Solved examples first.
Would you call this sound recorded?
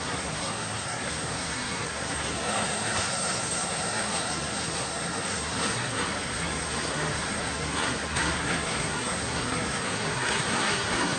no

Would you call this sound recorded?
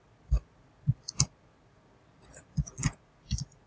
yes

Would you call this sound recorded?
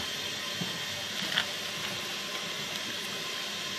yes